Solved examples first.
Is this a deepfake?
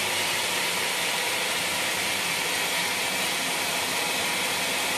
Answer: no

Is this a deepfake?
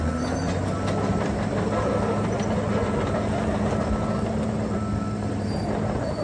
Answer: no